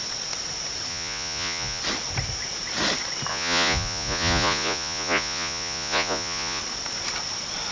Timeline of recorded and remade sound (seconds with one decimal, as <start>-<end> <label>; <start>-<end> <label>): 0.0-0.9 recorded; 0.9-1.8 remade; 1.8-3.3 recorded; 3.3-6.6 remade; 6.6-7.7 recorded